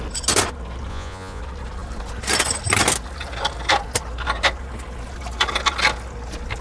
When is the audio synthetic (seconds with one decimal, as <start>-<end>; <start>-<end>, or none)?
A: 0.9-1.4